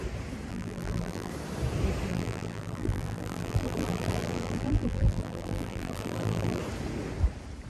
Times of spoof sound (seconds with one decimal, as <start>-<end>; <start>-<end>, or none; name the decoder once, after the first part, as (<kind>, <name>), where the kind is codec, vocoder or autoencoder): 0.5-1.3 (vocoder, BigVGAN v2); 2.1-6.6